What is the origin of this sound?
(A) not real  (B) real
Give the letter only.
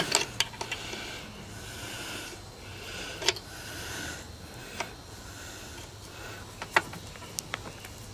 B